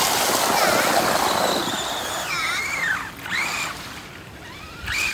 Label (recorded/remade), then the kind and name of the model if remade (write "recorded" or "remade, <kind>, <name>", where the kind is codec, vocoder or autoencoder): recorded